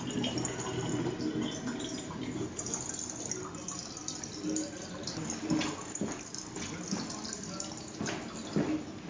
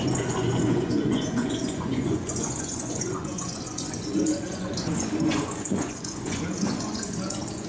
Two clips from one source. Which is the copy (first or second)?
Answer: second